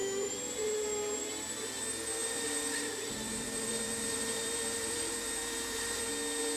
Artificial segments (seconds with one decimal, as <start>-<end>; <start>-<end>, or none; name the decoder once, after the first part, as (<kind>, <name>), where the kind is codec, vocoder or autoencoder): 2.2-6.0 (vocoder, BigVGAN v2)